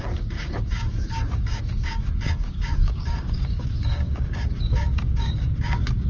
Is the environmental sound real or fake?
fake